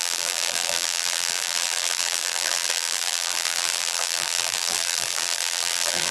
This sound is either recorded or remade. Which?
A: remade